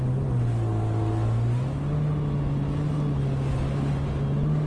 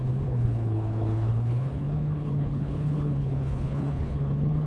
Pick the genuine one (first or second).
first